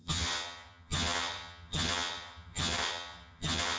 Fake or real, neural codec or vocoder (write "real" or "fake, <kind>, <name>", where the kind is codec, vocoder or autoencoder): fake, vocoder, HiFi-GAN